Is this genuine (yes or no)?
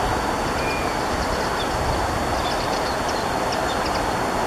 yes